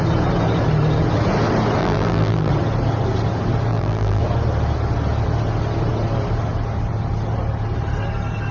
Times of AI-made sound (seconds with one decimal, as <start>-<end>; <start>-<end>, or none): 1.8-2.5; 3.7-4.2